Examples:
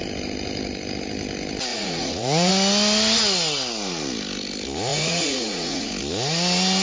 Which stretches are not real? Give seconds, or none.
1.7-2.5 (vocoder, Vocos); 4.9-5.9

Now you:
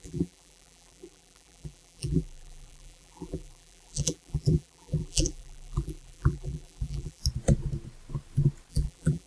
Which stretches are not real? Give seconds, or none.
0.0-7.2 (vocoder, BigVGAN v2); 8.7-9.3

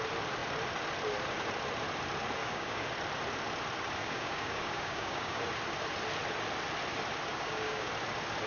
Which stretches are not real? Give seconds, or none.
2.4-2.9 (codec, DAC); 4.0-5.4; 7.3-7.9

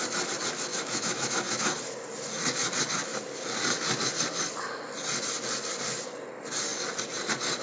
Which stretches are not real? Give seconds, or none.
0.7-1.8 (autoencoder, DAC-VAE)

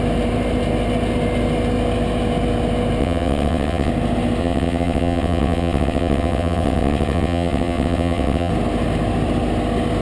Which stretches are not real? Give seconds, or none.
3.0-3.9 (vocoder, WaveNeXt); 4.4-8.5

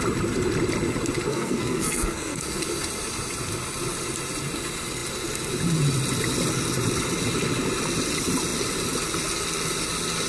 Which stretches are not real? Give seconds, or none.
1.3-2.6 (codec, SNAC)